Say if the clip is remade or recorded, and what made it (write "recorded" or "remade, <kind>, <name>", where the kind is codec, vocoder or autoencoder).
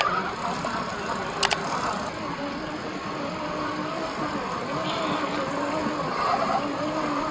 recorded